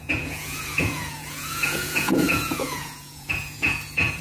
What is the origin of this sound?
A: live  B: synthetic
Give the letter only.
B